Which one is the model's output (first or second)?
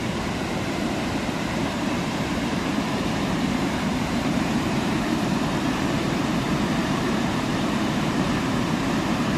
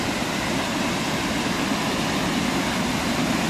first